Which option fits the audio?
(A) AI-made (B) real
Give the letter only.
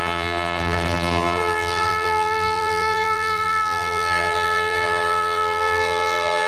A